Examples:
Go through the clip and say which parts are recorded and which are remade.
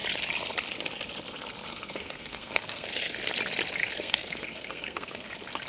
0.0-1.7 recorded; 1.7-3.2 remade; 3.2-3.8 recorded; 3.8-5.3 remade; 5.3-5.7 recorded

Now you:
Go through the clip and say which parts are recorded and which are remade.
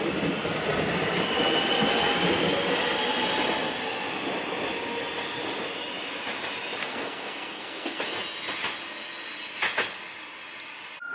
0.0-6.8 recorded; 6.8-8.0 remade; 8.0-11.1 recorded